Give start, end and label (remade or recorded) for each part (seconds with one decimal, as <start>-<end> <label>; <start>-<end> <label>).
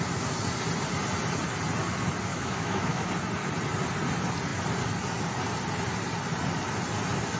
0.0-2.3 recorded; 2.3-3.1 remade; 3.1-7.4 recorded